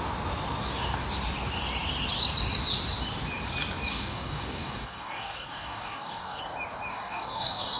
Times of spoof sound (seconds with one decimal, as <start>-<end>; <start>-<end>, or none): 3.9-6.4; 6.9-7.8